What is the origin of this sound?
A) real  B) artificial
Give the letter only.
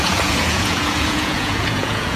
B